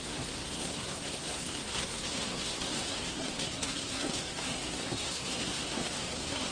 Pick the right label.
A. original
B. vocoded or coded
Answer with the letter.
B